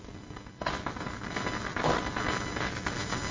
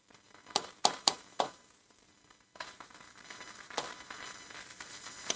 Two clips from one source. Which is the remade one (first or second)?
second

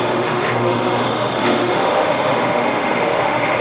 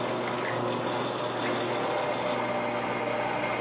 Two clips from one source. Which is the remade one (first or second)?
first